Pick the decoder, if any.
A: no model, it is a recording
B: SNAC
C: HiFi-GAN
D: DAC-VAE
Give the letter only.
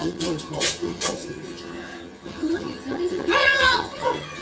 C